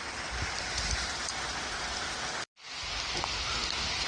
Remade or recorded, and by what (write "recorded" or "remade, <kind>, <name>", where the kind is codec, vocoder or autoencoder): remade, vocoder, BigVGAN v2